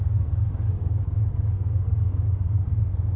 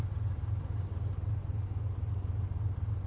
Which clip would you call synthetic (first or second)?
first